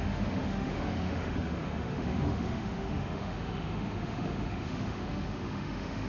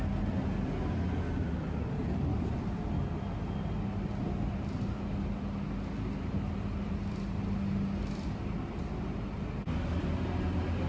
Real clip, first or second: second